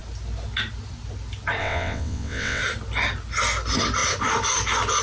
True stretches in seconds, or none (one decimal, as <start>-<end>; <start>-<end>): 0.0-1.6; 2.6-5.0